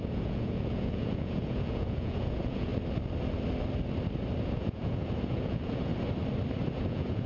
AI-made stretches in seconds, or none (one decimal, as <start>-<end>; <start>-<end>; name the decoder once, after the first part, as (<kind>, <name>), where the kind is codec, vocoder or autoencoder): 0.0-2.7 (vocoder, Vocos); 4.4-5.9; 6.7-7.3